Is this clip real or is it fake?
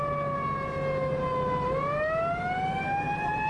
real